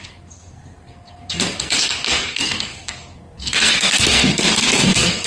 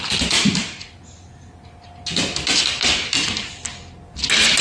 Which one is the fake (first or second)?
first